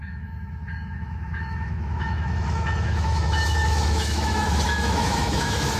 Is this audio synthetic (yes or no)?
yes